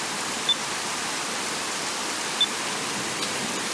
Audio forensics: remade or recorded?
recorded